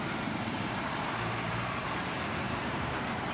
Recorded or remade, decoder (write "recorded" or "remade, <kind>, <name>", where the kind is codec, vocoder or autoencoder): remade, vocoder, BigVGAN v2